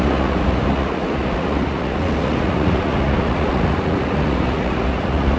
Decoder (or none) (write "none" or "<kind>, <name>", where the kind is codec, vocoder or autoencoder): vocoder, Vocos